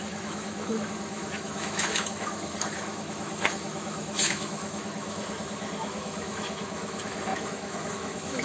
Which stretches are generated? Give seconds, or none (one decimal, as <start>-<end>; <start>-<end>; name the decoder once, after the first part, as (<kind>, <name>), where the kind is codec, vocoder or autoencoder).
0.0-8.4 (autoencoder, DAC-VAE)